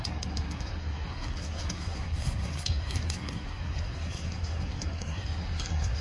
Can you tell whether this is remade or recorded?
remade